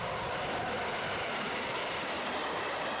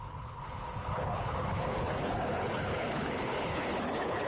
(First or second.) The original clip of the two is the first